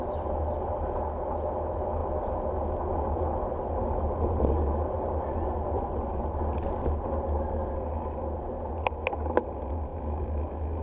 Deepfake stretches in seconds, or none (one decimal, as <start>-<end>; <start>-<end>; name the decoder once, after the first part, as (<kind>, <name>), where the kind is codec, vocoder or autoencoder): none